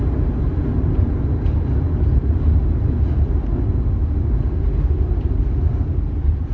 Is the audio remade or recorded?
recorded